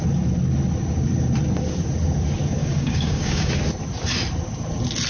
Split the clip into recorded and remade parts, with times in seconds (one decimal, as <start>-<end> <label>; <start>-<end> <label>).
0.0-2.6 recorded; 2.6-3.5 remade; 3.5-5.1 recorded